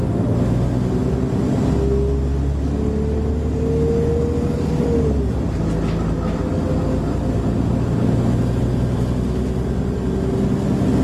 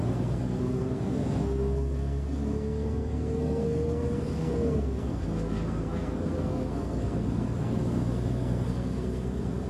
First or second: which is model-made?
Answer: second